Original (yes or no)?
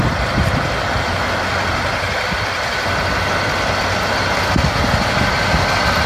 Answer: yes